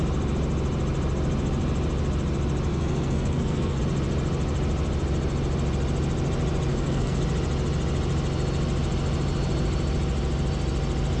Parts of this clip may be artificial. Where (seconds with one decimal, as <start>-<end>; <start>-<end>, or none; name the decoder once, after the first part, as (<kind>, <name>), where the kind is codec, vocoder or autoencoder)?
2.7-3.8 (codec, SNAC); 6.7-7.2